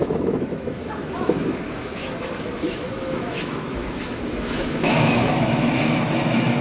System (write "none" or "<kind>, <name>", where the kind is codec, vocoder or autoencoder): autoencoder, DAC-VAE